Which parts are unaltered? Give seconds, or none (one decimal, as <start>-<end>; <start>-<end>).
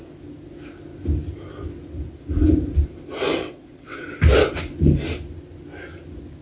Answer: 0.0-3.4; 4.0-6.4